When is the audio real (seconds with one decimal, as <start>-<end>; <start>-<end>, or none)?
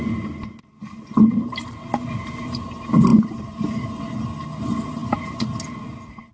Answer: 0.0-6.3